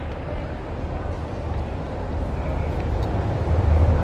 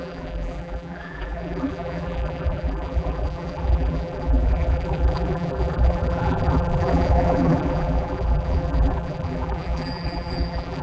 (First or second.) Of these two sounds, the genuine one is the first